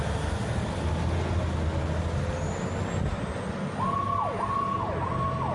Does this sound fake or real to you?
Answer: real